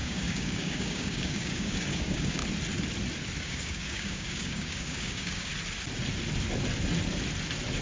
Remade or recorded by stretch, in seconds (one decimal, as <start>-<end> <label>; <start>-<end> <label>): 0.0-2.4 remade; 2.4-3.4 recorded; 3.4-5.5 remade; 5.5-7.8 recorded

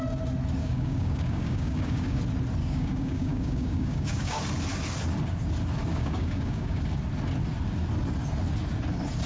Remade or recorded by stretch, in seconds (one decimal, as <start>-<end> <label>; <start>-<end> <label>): 0.0-0.6 recorded; 0.6-2.2 remade; 2.2-2.6 recorded; 2.6-4.4 remade; 4.4-5.9 recorded; 5.9-6.8 remade; 6.8-9.3 recorded

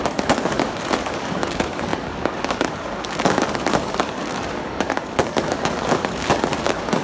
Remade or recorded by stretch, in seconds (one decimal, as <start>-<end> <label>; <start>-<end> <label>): 0.0-7.0 remade

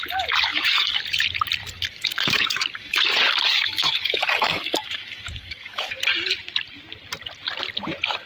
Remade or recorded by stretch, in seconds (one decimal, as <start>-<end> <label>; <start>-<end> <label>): 0.0-0.5 recorded; 0.5-1.0 remade; 1.0-1.6 recorded; 1.6-5.9 remade; 5.9-8.3 recorded